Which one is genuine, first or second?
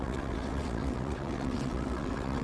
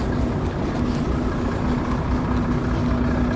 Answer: second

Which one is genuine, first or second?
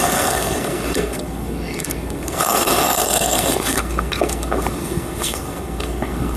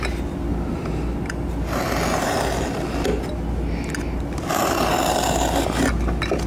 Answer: second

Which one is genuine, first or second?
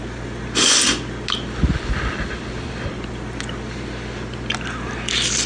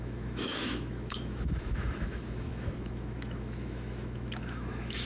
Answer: first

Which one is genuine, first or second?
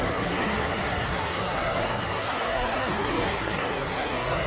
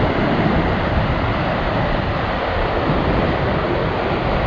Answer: second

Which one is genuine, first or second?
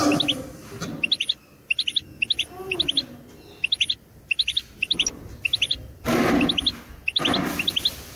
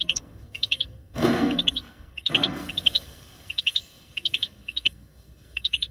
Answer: first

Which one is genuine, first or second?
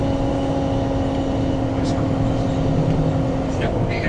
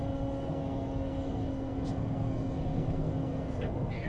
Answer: first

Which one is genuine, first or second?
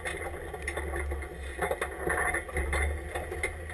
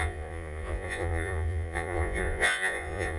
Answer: first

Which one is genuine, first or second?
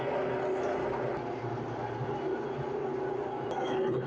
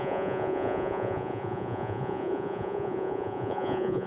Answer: first